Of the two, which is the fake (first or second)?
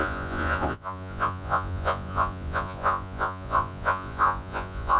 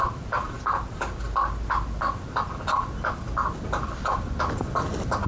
first